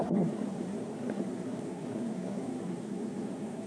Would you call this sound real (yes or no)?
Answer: no